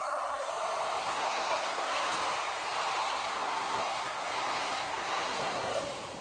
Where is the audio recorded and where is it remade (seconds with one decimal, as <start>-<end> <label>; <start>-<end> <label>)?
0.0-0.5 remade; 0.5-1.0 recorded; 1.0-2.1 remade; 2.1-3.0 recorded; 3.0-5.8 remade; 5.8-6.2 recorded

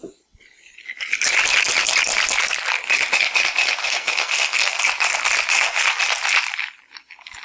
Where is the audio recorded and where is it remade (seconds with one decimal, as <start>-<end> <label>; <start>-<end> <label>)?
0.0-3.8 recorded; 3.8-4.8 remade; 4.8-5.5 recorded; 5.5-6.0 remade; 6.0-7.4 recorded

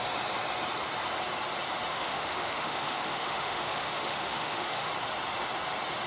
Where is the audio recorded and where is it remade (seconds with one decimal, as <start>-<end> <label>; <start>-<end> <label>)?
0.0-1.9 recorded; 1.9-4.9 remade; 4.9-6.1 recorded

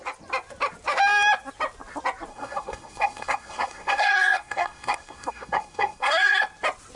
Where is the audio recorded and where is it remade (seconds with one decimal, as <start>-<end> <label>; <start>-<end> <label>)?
0.0-2.3 recorded; 2.3-6.4 remade; 6.4-7.0 recorded

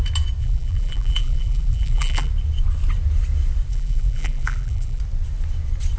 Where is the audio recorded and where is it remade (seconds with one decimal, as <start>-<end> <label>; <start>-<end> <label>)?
0.0-0.4 recorded; 0.4-2.3 remade; 2.3-3.7 recorded; 3.7-5.0 remade; 5.0-6.0 recorded

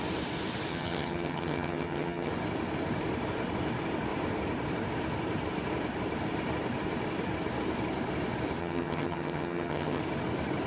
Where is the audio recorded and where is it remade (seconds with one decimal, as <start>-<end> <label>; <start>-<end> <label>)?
0.0-0.7 recorded; 0.7-2.3 remade; 2.3-8.6 recorded; 8.6-10.0 remade; 10.0-10.7 recorded